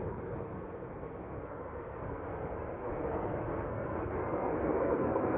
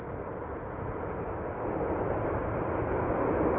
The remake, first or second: first